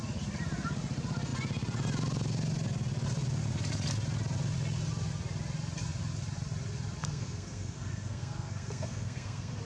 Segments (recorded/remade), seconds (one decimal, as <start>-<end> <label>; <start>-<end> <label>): 0.0-7.0 recorded; 7.0-9.6 remade